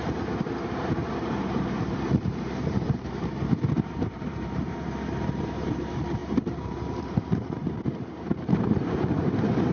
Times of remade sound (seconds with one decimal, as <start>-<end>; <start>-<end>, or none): 0.0-9.7